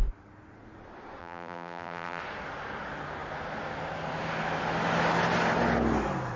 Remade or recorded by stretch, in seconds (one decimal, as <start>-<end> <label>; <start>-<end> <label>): 0.0-1.2 recorded; 1.2-2.2 remade; 2.2-6.4 recorded